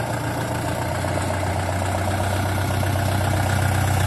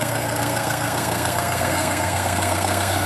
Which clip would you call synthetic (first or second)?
second